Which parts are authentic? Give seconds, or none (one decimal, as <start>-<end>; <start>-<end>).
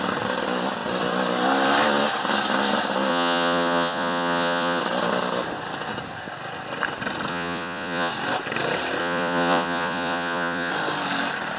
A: 0.0-3.1; 4.8-7.3; 8.1-9.0; 10.7-11.6